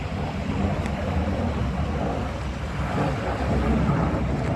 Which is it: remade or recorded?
recorded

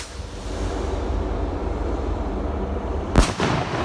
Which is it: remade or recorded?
recorded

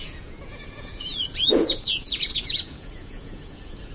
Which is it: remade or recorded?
remade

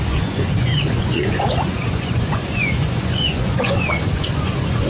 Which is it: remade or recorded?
remade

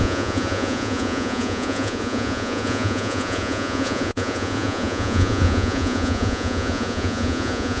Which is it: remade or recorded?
remade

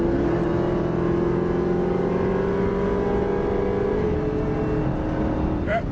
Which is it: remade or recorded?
recorded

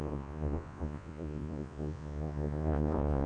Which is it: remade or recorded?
remade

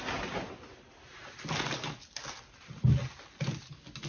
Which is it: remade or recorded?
recorded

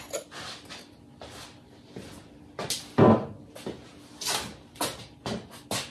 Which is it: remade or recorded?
recorded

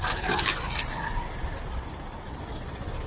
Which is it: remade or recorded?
recorded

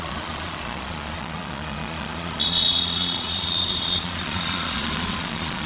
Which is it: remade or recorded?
remade